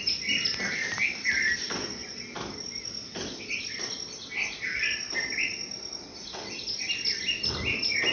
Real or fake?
real